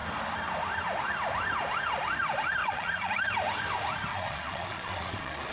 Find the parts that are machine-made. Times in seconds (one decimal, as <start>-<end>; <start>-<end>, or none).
2.6-3.1; 4.1-5.5